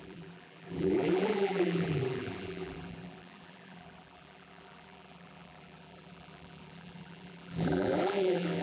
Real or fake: fake